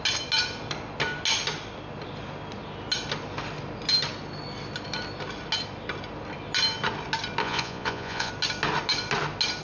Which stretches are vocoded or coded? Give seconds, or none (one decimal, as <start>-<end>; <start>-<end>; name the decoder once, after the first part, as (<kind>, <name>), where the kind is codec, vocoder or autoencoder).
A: 7.4-8.3 (vocoder, Vocos)